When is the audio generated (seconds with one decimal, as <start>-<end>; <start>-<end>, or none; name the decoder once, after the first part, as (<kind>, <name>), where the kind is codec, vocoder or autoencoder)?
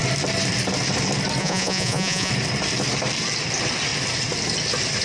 1.4-2.3 (vocoder, Vocos)